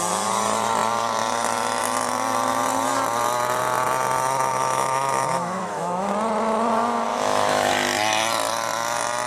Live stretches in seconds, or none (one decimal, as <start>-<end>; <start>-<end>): 0.0-4.5; 6.1-7.1; 7.7-9.3